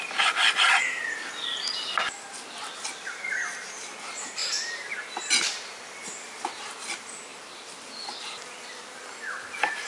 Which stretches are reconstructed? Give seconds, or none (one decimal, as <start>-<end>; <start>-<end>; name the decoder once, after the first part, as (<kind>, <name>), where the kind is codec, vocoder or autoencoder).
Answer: 1.4-2.4 (vocoder, BigVGAN v2); 7.3-8.5